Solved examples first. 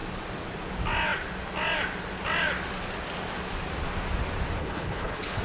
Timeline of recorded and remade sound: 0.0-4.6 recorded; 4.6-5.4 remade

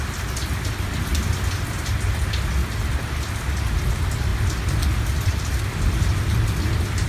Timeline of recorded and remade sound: 0.0-2.6 recorded; 2.6-3.3 remade; 3.3-4.3 recorded; 4.3-6.6 remade; 6.6-7.1 recorded

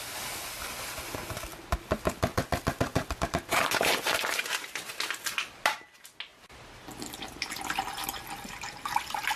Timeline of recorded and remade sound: 0.0-9.4 recorded

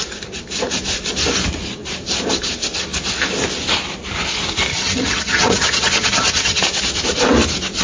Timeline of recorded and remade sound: 0.0-4.7 recorded; 4.7-6.6 remade; 6.6-7.8 recorded

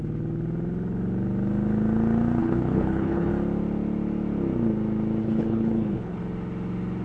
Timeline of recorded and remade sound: 0.0-2.4 recorded; 2.4-3.3 remade; 3.3-5.2 recorded; 5.2-6.2 remade; 6.2-7.0 recorded